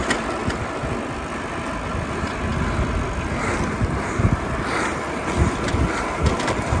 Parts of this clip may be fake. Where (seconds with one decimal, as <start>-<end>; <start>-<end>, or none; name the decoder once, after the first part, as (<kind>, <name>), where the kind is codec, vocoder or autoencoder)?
none